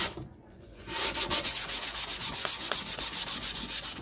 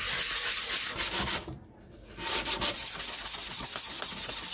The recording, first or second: second